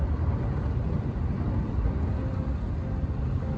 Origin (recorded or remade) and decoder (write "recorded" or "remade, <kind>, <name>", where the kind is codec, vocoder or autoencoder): recorded